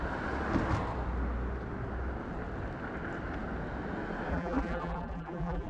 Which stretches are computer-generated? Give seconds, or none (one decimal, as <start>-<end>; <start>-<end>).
4.3-5.7